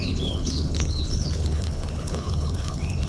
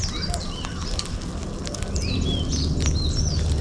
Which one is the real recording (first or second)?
second